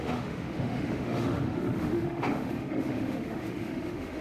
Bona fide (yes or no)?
no